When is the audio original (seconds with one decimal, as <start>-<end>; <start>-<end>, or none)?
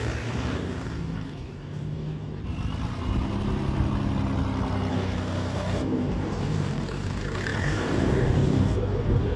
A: 2.4-4.9